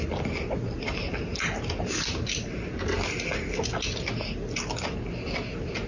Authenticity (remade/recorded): recorded